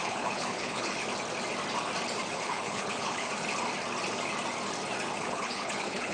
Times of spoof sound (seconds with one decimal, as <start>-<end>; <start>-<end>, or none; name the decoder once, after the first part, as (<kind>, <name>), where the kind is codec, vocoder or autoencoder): 0.0-1.0 (codec, HILCodec); 2.3-3.3; 5.2-6.1